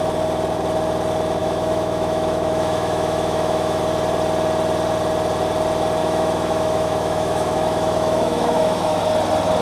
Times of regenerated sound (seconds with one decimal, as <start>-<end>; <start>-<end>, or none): 1.4-3.8; 6.0-9.0

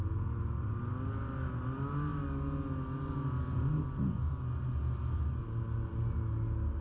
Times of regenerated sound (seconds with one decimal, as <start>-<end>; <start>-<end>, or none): none

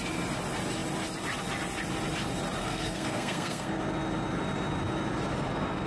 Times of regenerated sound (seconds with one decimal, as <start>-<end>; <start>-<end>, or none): 2.6-3.8

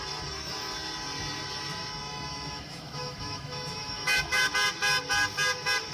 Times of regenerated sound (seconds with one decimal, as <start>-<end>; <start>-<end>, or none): 2.3-4.5

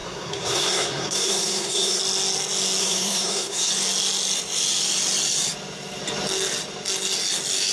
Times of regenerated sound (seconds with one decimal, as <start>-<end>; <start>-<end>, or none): 0.0-2.0; 2.8-3.7

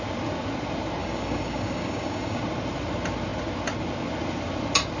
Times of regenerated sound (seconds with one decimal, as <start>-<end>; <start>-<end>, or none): 1.0-2.4

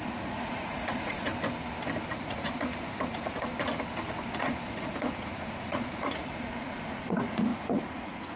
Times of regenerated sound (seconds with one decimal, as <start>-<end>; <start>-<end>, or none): 0.0-1.3; 2.1-3.5; 4.3-8.4